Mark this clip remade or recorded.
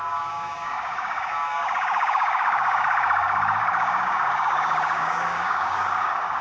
remade